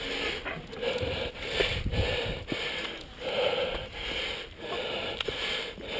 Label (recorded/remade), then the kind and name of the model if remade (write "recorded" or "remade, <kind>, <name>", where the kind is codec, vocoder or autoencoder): recorded